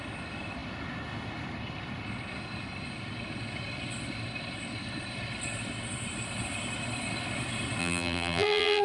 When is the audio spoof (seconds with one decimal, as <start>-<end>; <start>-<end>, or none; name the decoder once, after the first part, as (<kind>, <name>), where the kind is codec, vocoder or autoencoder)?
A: 7.8-8.8 (vocoder, BigVGAN v2)